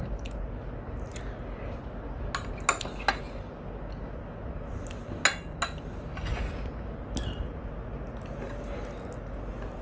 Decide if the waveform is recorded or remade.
recorded